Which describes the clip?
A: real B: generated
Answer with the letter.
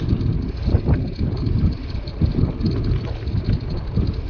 A